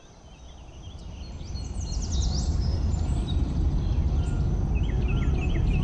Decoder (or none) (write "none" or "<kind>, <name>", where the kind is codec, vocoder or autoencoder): none